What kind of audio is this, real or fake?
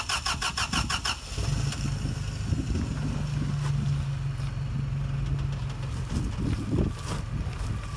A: real